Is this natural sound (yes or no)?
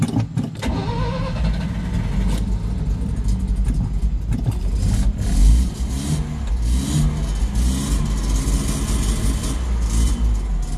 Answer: yes